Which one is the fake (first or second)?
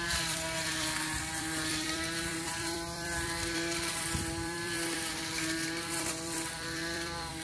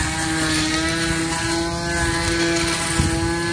first